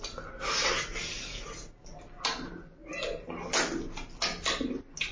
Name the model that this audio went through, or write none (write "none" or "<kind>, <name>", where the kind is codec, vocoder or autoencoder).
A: none